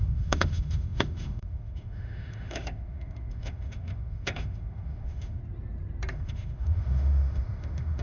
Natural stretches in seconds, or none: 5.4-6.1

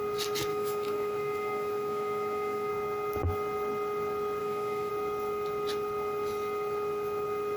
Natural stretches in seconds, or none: 0.0-0.5; 2.7-4.4; 4.9-7.6

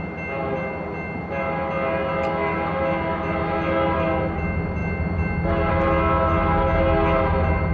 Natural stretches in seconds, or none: 0.0-7.7

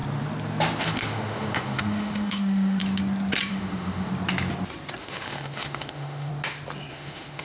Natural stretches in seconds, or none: 0.0-0.8; 2.8-3.5; 4.1-5.0; 6.3-6.9

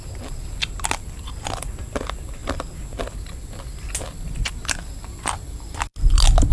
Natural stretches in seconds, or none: 0.0-6.5

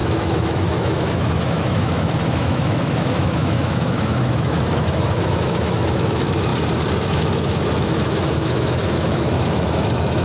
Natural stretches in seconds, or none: 6.5-7.1